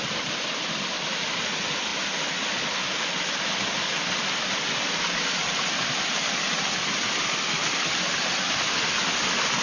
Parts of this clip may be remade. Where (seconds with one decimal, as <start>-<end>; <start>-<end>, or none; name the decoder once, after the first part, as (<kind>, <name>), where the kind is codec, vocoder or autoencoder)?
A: none

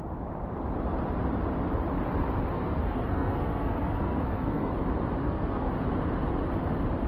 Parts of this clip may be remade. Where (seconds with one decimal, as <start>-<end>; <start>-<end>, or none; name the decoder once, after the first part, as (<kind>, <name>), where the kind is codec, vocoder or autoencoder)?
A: 2.5-4.7 (codec, SNAC); 5.2-5.7

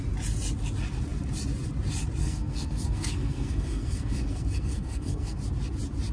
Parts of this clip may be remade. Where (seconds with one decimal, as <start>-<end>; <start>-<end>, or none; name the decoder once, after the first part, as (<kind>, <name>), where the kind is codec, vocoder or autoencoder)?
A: 2.2-5.4 (codec, SNAC)

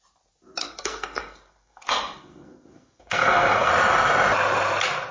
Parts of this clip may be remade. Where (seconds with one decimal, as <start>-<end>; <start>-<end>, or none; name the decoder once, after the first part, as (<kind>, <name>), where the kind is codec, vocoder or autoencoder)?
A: 0.6-3.7 (codec, SNAC)

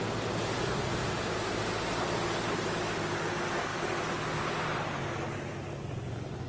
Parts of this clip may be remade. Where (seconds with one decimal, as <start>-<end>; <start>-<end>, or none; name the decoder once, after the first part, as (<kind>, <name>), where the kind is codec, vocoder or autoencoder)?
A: none